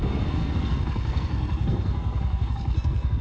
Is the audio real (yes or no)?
no